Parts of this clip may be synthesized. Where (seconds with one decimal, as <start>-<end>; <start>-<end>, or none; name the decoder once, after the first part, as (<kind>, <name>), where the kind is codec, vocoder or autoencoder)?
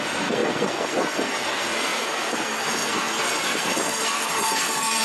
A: 0.0-5.0 (codec, SNAC)